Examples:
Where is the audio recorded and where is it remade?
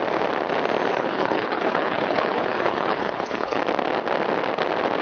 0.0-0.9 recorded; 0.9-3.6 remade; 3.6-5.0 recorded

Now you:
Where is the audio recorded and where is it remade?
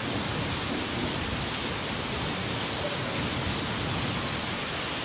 0.0-5.0 recorded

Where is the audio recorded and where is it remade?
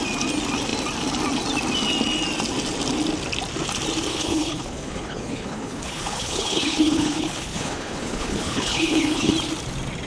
0.0-4.1 recorded; 4.1-9.3 remade; 9.3-10.1 recorded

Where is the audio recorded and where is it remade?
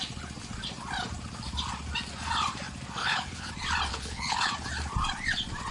0.0-3.0 recorded; 3.0-3.5 remade; 3.5-3.9 recorded; 3.9-4.5 remade; 4.5-5.7 recorded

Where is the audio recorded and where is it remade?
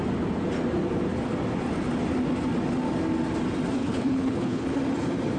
0.0-3.8 recorded; 3.8-4.8 remade; 4.8-5.4 recorded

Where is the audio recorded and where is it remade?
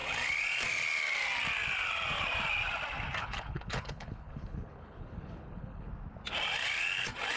0.0-3.2 recorded; 3.2-5.9 remade; 5.9-7.4 recorded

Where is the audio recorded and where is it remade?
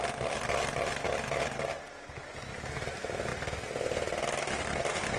0.0-5.2 recorded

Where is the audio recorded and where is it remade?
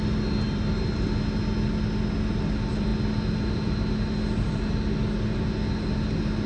0.0-6.5 recorded